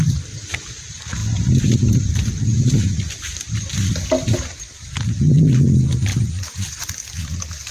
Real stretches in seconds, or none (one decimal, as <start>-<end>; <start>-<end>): 0.0-1.2; 2.1-2.5; 3.5-6.1; 6.9-7.7